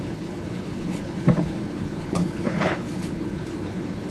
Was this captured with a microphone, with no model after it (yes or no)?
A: no